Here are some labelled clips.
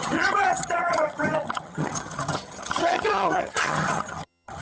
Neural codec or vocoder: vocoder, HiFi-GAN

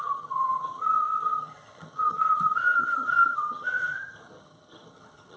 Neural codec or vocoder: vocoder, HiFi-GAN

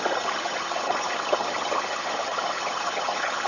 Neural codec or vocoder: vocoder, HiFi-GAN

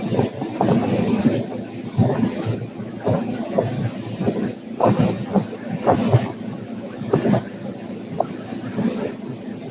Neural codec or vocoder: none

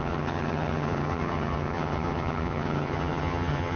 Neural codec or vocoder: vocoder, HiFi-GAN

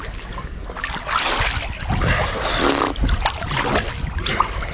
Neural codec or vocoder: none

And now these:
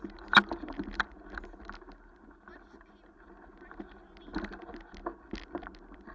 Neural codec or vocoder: none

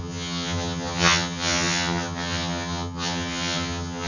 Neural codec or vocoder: vocoder, HiFi-GAN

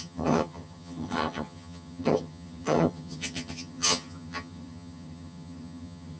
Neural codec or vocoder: vocoder, HiFi-GAN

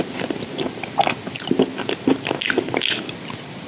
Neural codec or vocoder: none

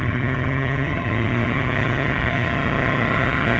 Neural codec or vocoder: vocoder, HiFi-GAN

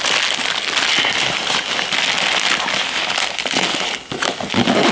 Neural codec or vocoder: none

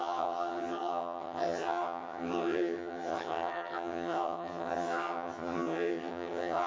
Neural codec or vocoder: vocoder, HiFi-GAN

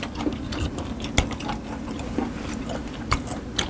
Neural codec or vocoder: none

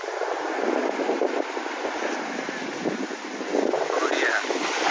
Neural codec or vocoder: none